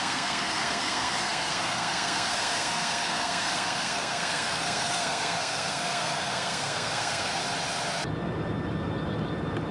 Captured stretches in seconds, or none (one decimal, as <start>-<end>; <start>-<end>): 7.4-9.7